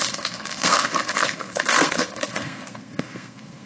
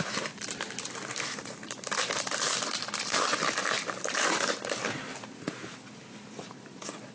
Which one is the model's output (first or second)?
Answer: first